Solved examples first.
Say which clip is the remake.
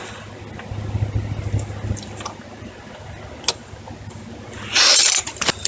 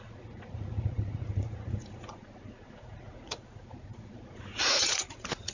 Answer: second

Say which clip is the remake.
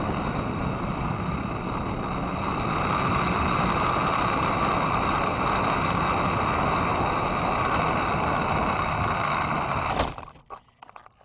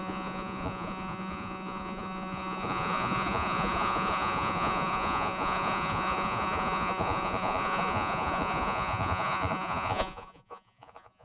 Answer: second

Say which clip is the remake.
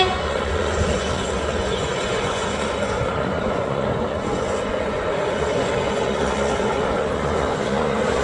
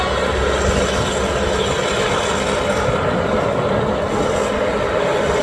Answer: first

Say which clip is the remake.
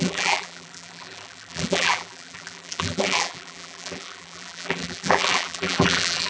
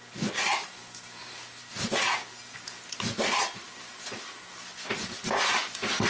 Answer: first